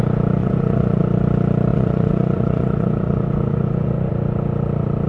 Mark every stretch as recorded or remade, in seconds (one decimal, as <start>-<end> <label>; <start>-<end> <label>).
0.0-0.4 recorded; 0.4-1.0 remade; 1.0-1.7 recorded; 1.7-4.1 remade; 4.1-5.1 recorded